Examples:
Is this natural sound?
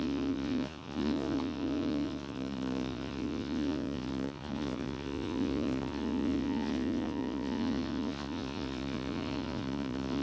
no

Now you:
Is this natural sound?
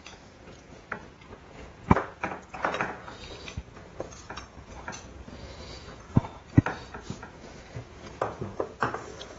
no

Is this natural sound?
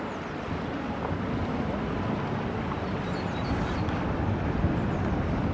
yes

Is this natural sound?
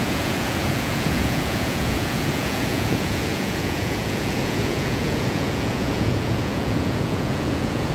no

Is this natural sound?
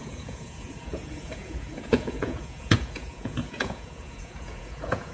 no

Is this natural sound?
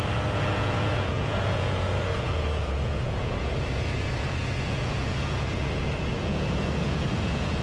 no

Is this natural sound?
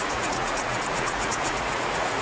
no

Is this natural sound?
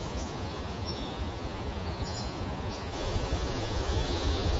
no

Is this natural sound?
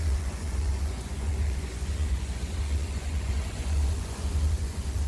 no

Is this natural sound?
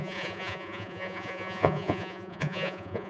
no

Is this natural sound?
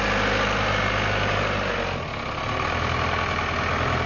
yes